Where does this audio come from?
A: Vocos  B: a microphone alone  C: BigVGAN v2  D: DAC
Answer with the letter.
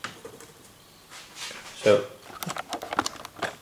B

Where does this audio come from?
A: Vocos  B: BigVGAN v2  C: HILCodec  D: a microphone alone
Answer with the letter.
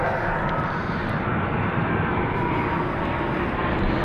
D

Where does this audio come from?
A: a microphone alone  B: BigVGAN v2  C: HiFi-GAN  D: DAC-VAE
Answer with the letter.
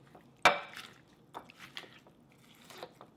A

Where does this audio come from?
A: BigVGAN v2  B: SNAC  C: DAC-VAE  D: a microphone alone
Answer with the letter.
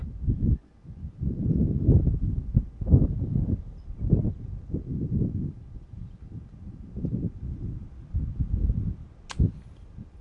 D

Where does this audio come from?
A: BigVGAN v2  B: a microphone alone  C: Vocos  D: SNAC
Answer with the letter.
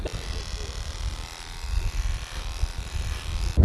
B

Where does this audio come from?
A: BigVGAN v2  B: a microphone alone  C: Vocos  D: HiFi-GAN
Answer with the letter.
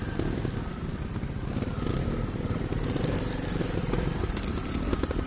A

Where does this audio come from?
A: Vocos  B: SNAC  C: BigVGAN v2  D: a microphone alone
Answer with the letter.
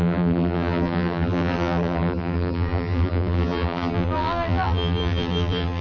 C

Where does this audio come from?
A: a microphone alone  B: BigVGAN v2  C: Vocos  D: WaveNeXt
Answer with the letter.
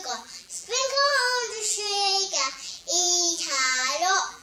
B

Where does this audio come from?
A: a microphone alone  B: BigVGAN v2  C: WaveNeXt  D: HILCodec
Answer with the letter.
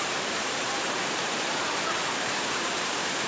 B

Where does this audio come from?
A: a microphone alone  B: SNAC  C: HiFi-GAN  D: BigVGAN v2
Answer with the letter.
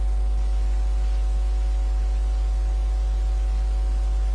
A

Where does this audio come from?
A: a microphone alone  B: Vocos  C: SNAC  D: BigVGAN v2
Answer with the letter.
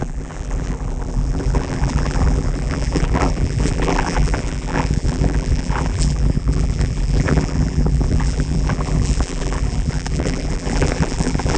D